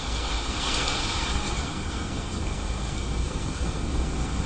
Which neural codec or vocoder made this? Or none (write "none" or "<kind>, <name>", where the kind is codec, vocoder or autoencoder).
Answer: codec, SNAC